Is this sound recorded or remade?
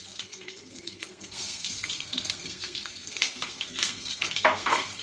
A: remade